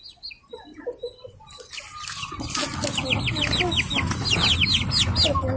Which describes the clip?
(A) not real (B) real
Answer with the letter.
B